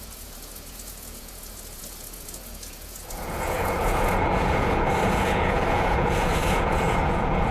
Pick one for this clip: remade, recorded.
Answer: remade